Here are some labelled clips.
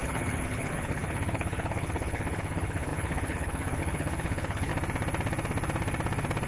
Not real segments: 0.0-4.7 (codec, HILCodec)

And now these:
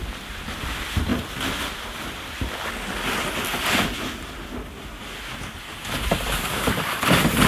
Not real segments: 0.0-1.1 (vocoder, BigVGAN v2); 5.6-7.5

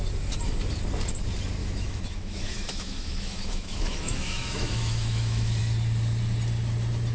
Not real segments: 1.6-5.6 (autoencoder, DAC-VAE)

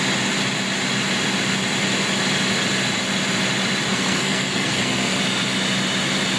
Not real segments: 3.9-5.2 (codec, SNAC)